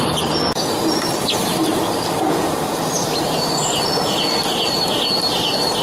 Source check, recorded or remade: recorded